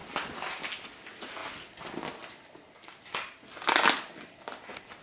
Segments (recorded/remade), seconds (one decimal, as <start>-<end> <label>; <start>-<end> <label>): 0.0-5.0 recorded